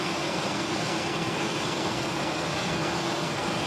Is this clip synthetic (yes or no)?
yes